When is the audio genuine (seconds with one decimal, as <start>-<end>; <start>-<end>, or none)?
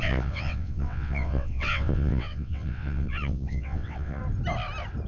4.2-5.1